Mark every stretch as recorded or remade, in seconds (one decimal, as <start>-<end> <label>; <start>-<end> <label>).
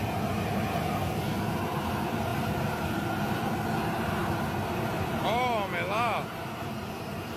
0.0-7.4 recorded